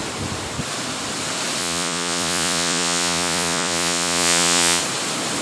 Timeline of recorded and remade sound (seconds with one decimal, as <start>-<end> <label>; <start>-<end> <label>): 0.0-1.6 recorded; 1.6-4.8 remade; 4.8-5.4 recorded